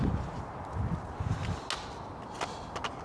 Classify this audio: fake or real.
real